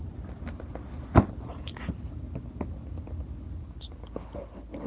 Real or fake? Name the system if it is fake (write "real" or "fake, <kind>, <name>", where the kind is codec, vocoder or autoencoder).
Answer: real